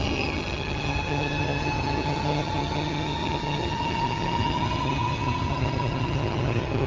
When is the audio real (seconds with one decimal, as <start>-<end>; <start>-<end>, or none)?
none

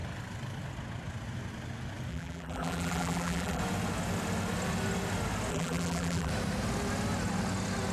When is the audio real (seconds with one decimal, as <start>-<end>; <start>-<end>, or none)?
0.0-2.1; 3.6-5.5; 6.3-7.9

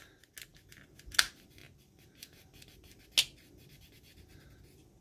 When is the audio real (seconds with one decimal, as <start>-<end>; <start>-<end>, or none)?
0.0-5.0

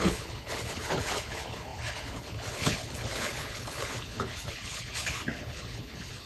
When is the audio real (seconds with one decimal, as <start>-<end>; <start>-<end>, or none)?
none

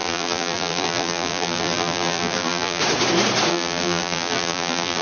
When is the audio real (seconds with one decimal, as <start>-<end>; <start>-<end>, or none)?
2.8-3.5

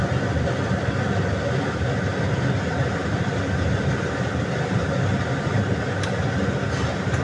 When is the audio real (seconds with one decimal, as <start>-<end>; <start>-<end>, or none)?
0.0-3.0; 5.6-7.2

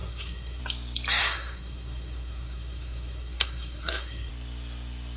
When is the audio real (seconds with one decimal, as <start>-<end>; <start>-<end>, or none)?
0.6-1.2; 4.3-5.2